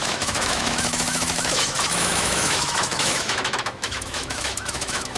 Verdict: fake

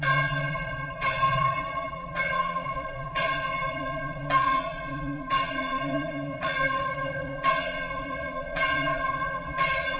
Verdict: fake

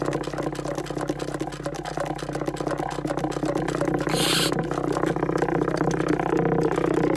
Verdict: real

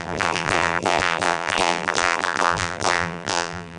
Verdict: fake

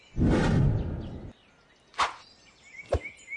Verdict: real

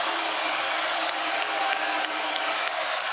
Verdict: fake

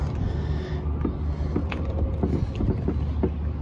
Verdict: real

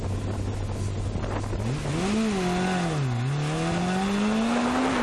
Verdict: real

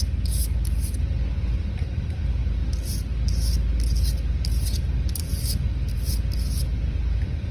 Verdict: real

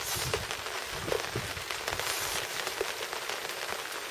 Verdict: real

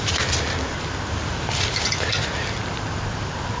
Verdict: real